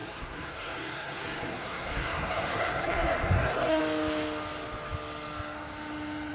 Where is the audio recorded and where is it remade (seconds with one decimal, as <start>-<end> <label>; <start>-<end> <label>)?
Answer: 0.0-3.8 remade; 3.8-6.3 recorded